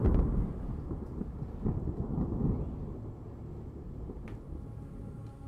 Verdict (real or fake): real